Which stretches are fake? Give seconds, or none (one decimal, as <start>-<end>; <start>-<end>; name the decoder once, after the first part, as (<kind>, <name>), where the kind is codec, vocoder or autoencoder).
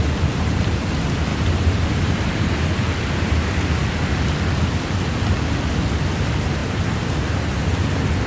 1.3-2.6 (vocoder, BigVGAN v2)